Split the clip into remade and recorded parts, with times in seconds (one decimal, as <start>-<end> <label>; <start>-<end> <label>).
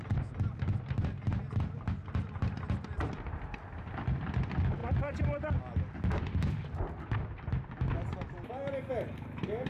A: 0.0-9.7 recorded